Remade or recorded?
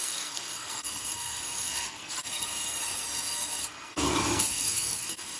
remade